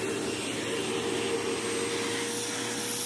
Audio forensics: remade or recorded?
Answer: recorded